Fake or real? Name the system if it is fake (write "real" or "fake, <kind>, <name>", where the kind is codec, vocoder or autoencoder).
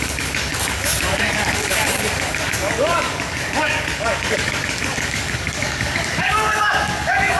fake, codec, DAC